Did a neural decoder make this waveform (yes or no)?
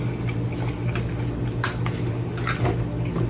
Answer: no